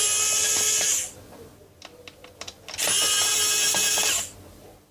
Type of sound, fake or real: real